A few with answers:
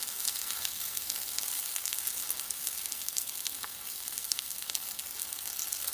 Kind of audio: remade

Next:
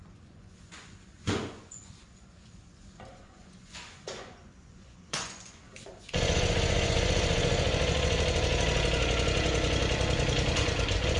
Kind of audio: remade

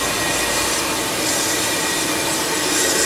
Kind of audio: recorded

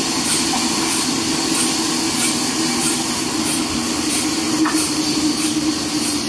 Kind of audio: recorded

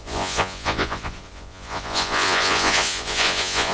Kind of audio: remade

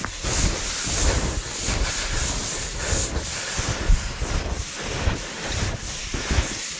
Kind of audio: recorded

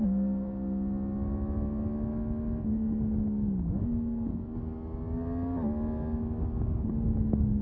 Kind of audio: recorded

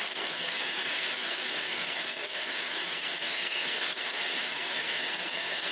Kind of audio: remade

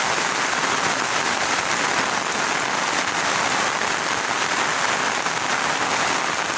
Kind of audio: recorded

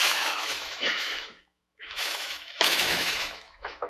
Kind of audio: remade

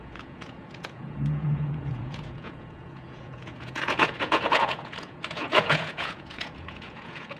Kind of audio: remade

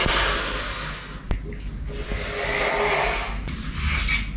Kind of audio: recorded